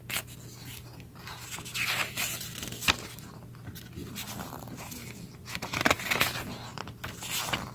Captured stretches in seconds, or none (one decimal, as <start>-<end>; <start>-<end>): 0.0-4.0; 6.0-6.7; 7.2-7.7